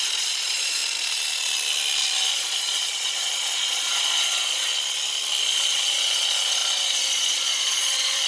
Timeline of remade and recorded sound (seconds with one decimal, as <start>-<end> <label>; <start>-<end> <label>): 0.0-0.8 remade; 0.8-2.3 recorded; 2.3-4.7 remade; 4.7-5.4 recorded; 5.4-8.3 remade